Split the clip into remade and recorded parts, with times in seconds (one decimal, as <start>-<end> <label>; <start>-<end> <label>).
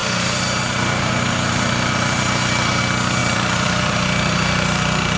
0.0-2.8 remade; 2.8-3.2 recorded; 3.2-5.2 remade